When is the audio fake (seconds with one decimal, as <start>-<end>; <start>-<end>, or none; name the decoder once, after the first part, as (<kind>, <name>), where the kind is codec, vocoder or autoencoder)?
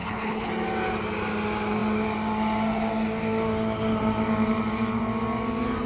0.0-0.5 (codec, HILCodec)